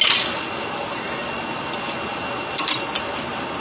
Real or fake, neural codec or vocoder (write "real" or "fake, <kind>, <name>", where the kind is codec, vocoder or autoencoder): real